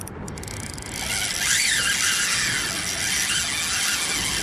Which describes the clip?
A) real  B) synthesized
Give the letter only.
A